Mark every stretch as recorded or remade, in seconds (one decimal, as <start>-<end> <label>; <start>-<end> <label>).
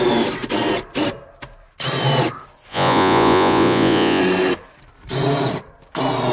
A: 0.0-2.7 recorded; 2.7-4.2 remade; 4.2-6.3 recorded